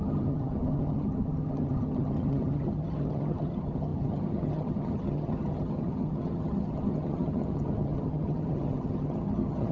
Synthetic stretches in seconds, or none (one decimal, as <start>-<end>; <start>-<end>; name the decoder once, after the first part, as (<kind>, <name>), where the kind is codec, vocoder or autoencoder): 0.0-9.7 (vocoder, HiFi-GAN)